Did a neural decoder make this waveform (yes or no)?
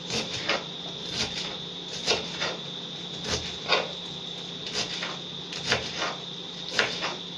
no